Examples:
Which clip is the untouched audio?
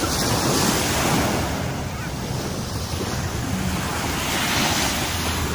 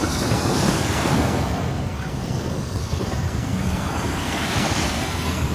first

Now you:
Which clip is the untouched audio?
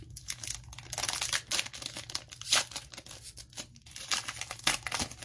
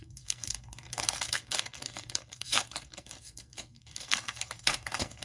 first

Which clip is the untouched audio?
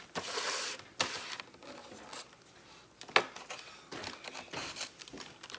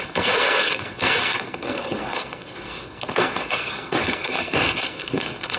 first